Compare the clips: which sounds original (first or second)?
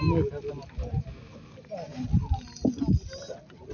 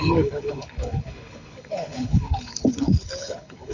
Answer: first